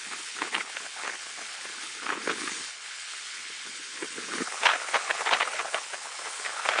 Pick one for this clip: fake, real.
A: fake